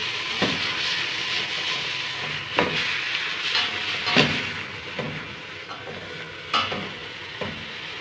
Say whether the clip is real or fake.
real